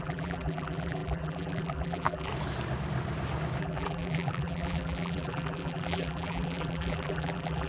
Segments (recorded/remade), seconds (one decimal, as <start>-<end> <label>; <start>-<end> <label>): 0.0-2.3 remade; 2.3-3.6 recorded; 3.6-7.7 remade